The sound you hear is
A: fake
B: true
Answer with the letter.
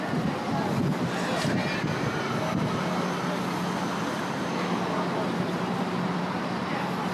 B